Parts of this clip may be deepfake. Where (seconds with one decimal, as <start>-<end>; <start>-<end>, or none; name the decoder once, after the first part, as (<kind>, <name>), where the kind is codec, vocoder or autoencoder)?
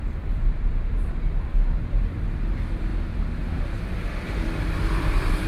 0.0-2.9 (vocoder, BigVGAN v2); 3.5-5.5